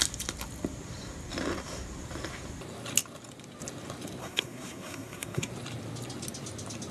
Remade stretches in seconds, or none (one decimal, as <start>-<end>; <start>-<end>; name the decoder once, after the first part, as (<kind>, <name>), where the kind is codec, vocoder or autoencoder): 4.2-5.5 (codec, SNAC)